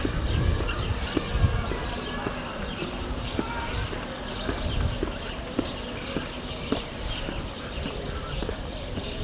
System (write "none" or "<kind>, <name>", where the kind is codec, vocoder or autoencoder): none